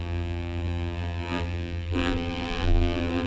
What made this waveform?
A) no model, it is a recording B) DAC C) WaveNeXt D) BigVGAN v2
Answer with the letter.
D